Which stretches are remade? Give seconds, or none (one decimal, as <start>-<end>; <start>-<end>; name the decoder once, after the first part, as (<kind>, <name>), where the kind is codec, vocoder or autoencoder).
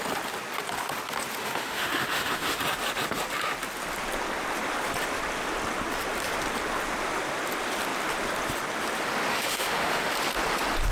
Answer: 1.4-2.6 (autoencoder, DAC-VAE); 9.3-10.1